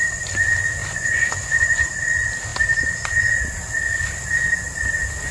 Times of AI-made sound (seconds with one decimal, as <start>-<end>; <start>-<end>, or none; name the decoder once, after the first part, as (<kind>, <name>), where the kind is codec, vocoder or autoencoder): 0.8-1.9 (vocoder, Vocos)